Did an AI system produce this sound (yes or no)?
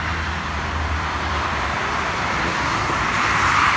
yes